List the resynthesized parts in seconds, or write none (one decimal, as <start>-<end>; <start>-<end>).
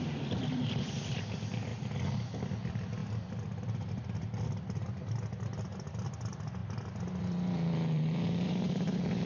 0.0-1.7; 2.6-9.3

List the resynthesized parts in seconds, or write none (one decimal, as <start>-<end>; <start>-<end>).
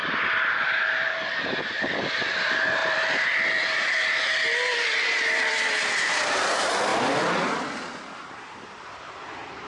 0.0-2.3; 2.8-4.1; 4.7-6.4